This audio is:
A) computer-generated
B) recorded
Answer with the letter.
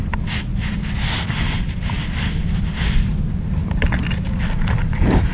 B